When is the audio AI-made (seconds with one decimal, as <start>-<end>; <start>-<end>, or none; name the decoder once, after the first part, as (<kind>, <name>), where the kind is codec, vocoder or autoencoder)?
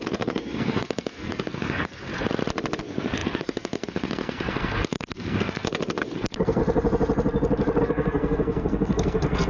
0.0-2.1 (codec, SNAC); 2.8-6.6; 7.8-9.5